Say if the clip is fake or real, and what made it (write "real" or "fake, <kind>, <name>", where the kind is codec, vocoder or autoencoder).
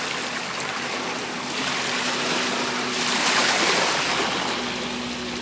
real